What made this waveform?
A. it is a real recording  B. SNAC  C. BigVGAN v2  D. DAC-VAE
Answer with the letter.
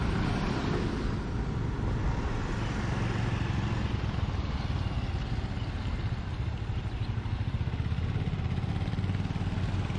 A